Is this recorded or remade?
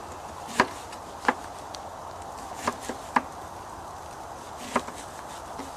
recorded